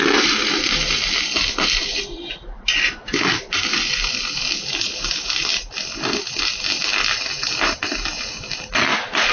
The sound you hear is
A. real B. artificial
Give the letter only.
A